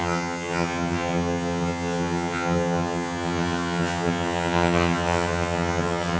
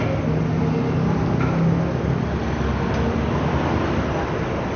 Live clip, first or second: second